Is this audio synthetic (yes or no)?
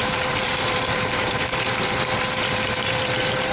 yes